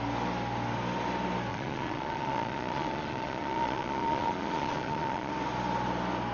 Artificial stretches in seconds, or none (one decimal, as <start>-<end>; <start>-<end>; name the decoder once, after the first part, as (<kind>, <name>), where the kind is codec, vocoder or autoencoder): 1.5-5.3 (vocoder, Vocos)

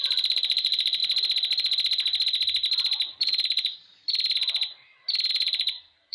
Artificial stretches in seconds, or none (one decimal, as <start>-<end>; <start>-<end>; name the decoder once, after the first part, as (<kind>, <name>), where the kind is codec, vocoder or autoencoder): 0.0-1.0 (vocoder, BigVGAN v2); 3.2-3.9; 5.3-6.1